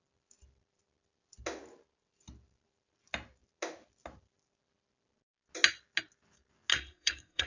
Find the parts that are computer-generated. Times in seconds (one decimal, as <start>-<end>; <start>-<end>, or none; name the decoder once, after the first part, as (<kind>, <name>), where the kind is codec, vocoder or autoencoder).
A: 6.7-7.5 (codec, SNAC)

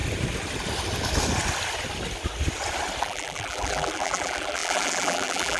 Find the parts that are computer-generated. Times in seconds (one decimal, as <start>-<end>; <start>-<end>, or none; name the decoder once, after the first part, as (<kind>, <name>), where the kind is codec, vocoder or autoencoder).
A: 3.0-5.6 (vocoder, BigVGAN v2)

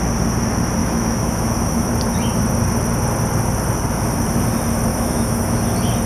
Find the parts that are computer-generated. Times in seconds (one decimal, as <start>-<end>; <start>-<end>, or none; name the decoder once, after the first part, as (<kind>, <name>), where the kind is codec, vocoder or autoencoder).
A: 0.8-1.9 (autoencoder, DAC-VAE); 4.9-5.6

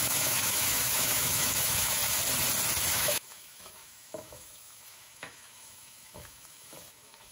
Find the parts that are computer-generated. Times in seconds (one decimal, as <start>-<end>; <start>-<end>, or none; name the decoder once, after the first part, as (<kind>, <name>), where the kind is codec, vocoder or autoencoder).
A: 0.0-2.0 (autoencoder, DAC-VAE); 2.9-7.3